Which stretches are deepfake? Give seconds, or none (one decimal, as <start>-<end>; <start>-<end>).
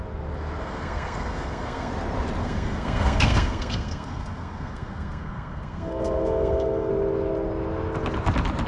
0.6-1.9; 2.4-6.9